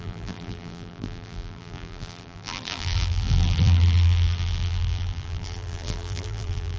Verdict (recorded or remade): remade